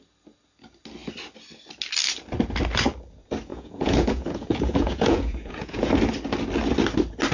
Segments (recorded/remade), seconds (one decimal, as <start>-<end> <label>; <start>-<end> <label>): 0.0-3.5 recorded; 3.5-5.9 remade; 5.9-7.3 recorded